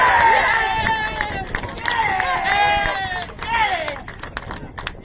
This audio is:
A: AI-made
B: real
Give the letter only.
B